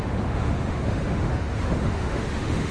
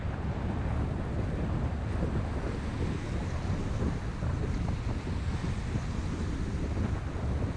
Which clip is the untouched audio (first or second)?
second